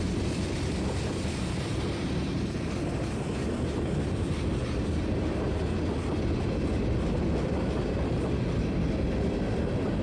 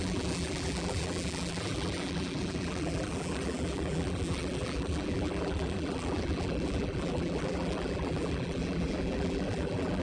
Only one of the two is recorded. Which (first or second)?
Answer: first